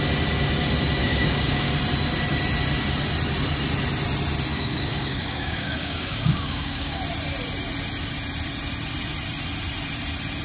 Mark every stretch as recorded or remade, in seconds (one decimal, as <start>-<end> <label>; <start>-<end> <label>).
0.0-1.0 recorded; 1.0-1.7 remade; 1.7-4.5 recorded; 4.5-7.0 remade; 7.0-10.4 recorded